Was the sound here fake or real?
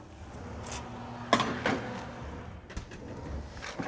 real